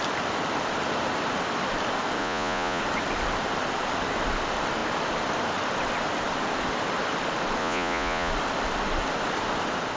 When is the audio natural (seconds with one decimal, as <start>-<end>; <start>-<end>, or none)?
0.0-2.2; 2.8-7.6; 8.3-10.0

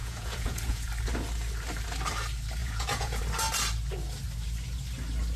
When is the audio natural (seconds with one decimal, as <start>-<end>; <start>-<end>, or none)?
0.9-2.6; 3.2-5.4

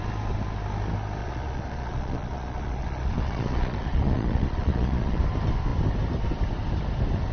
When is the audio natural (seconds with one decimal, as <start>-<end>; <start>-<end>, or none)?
0.0-1.2; 5.2-7.3

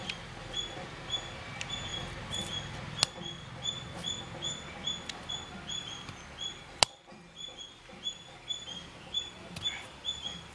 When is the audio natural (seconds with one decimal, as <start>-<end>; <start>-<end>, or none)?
0.0-10.5

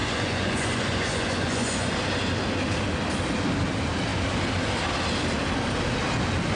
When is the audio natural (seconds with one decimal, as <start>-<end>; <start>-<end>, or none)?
1.9-6.6

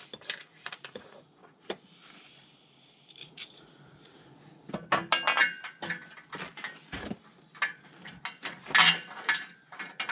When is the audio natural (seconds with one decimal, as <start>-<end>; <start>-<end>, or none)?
0.0-0.5; 1.8-3.2; 4.7-10.1

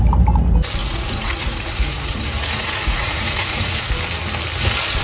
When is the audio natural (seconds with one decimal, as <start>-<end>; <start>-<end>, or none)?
0.0-0.8; 3.8-5.0

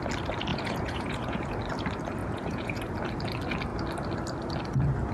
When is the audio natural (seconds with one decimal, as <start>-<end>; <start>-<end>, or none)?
0.0-0.5; 1.5-2.2; 2.8-5.1